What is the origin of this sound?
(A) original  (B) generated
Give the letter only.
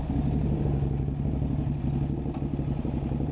A